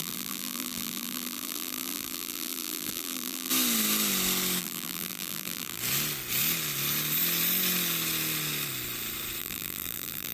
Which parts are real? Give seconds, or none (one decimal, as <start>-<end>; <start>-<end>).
3.5-4.6; 5.8-9.4